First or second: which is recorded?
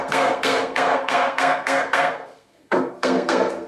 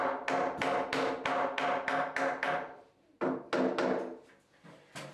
second